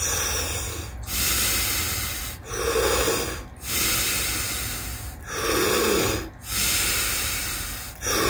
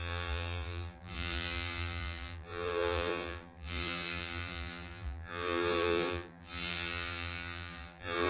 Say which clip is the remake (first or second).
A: second